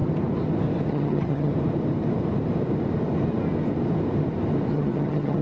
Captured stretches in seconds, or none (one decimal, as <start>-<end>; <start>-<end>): 0.0-0.9; 1.5-4.7